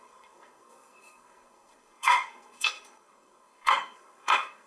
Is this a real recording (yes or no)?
no